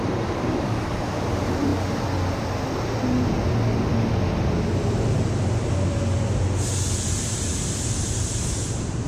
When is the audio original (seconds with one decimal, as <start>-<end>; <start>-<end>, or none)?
1.7-7.0